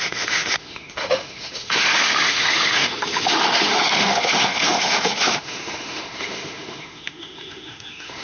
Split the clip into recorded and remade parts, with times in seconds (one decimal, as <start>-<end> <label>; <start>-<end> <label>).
0.0-8.2 remade